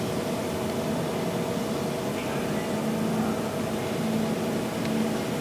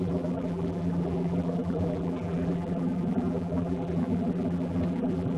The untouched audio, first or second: first